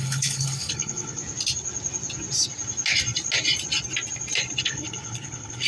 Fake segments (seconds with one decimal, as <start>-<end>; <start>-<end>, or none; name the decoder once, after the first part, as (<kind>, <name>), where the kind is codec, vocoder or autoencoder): 0.0-1.2 (codec, HILCodec); 4.6-5.7